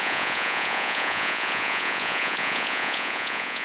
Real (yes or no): no